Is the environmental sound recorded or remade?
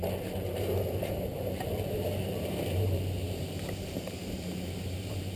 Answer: remade